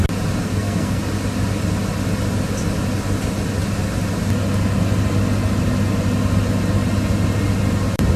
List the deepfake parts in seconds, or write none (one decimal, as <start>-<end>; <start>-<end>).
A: 0.4-1.0